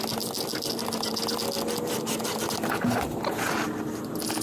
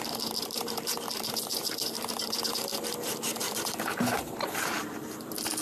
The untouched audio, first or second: first